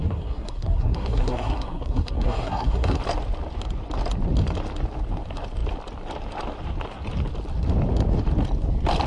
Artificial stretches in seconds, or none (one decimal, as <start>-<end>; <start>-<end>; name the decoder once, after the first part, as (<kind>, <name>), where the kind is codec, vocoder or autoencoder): 0.0-3.0 (codec, SNAC)